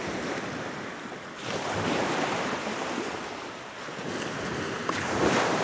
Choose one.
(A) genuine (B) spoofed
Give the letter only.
B